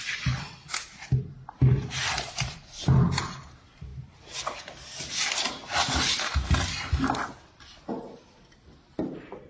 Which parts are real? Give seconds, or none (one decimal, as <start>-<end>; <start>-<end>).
0.0-9.5